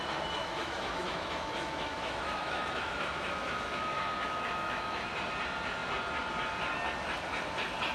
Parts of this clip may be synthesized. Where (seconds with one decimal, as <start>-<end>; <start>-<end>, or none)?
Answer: 0.4-5.1